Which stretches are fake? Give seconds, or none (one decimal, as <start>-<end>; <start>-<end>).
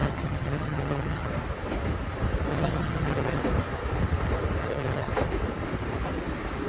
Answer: 0.0-1.3; 2.5-3.4; 4.6-5.1